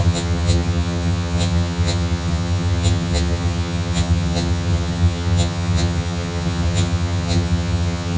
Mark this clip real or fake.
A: fake